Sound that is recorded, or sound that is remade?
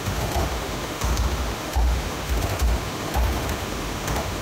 remade